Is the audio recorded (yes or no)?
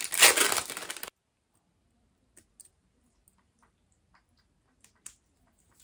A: yes